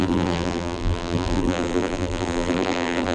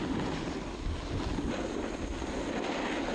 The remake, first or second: first